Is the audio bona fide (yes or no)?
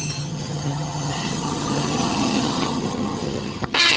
no